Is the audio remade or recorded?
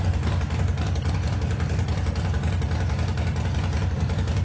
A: recorded